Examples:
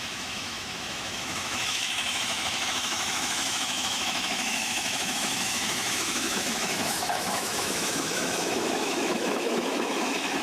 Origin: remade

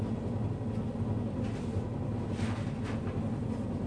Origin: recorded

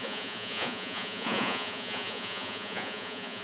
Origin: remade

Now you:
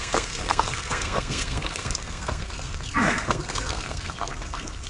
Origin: remade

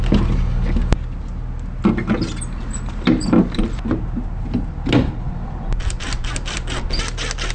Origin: recorded